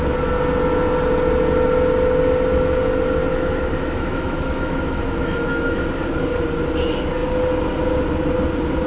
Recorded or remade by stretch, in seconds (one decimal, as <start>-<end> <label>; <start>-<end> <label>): 0.0-3.3 recorded; 3.3-5.8 remade; 5.8-8.9 recorded